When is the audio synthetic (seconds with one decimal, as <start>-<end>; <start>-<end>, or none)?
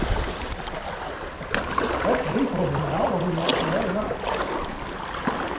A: none